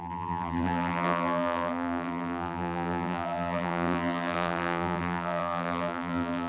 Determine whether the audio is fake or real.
fake